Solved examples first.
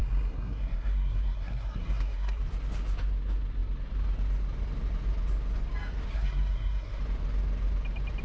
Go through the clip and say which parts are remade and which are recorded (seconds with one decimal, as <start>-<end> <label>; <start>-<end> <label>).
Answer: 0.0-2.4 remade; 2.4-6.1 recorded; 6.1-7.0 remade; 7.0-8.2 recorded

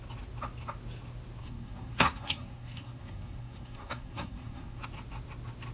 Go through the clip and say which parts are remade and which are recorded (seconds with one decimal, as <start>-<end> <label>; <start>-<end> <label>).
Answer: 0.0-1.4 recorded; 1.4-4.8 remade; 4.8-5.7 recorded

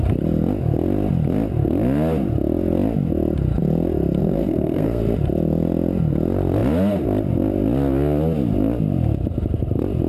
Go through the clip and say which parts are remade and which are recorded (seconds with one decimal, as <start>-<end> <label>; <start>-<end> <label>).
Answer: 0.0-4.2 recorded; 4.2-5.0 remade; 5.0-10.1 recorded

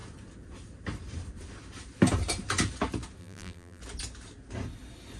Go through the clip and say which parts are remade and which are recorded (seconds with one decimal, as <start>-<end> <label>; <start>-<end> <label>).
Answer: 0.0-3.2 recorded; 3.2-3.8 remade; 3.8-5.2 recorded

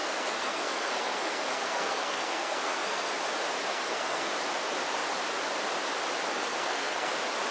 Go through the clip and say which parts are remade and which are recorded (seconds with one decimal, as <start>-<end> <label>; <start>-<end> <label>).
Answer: 0.0-3.1 remade; 3.1-3.7 recorded; 3.7-4.3 remade; 4.3-6.3 recorded; 6.3-7.1 remade; 7.1-7.5 recorded

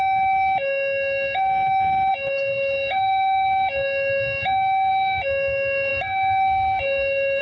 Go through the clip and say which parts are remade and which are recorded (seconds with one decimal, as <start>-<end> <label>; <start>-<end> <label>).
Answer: 0.0-7.4 recorded